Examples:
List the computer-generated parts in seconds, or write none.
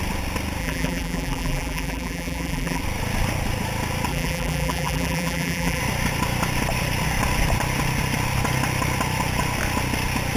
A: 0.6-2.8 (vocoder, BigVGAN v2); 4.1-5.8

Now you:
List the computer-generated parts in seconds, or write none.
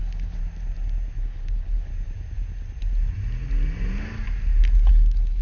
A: 0.0-0.4 (codec, HILCodec); 1.2-1.9; 4.9-5.4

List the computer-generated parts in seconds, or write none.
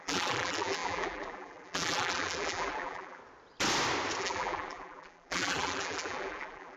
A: 0.0-3.2 (vocoder, BigVGAN v2); 4.2-6.8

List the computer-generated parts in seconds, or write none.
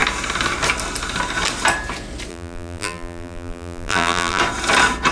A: 2.3-4.4 (vocoder, BigVGAN v2)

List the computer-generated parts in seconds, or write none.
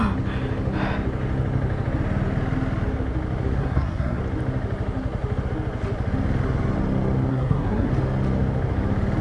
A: 3.6-4.2 (codec, SNAC); 7.3-7.9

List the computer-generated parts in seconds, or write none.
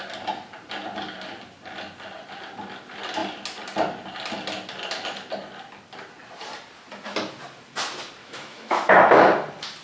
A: 8.2-9.2 (autoencoder, DAC-VAE)